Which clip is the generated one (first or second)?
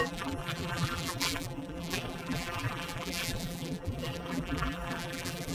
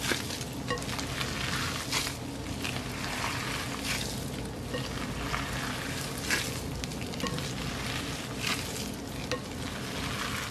first